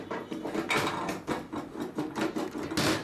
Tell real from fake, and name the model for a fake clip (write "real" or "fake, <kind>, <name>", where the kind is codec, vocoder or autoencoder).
real